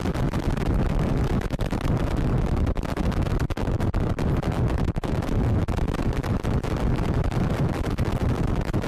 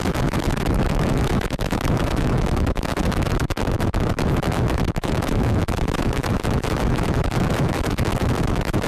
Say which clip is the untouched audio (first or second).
first